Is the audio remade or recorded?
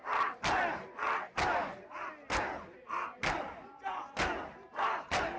recorded